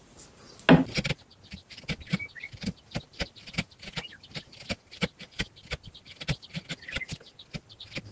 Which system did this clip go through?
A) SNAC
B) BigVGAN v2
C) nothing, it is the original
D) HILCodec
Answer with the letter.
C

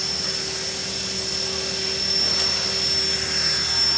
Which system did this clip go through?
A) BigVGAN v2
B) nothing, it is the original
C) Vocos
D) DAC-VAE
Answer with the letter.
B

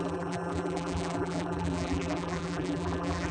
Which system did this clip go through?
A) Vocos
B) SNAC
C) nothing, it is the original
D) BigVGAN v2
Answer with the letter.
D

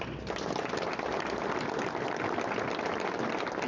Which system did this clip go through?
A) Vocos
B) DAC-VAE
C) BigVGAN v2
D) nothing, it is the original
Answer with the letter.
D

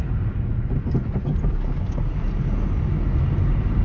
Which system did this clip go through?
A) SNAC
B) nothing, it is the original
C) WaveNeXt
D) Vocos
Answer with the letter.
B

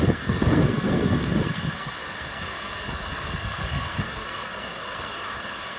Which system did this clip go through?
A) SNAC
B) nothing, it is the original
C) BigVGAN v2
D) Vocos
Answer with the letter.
A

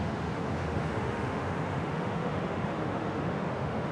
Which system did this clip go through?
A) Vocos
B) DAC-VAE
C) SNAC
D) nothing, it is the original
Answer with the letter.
B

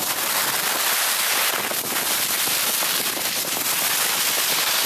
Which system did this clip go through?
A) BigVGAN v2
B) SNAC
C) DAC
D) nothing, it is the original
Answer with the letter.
D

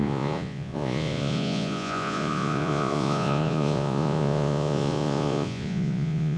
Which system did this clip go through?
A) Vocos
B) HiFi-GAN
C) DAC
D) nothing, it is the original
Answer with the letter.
A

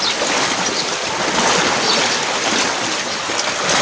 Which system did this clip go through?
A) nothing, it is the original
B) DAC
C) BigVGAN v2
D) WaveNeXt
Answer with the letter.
A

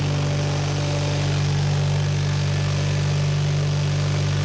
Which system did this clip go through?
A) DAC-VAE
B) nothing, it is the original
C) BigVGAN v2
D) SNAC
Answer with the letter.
B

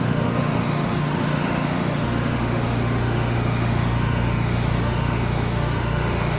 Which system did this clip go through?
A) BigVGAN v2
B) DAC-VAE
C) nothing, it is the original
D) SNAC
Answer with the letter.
B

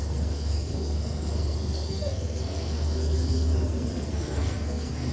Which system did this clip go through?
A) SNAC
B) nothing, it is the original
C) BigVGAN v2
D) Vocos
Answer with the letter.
A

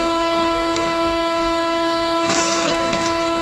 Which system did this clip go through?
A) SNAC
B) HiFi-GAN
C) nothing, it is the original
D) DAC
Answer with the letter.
D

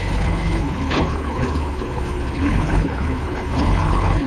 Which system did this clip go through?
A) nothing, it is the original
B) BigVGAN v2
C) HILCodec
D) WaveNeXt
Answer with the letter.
C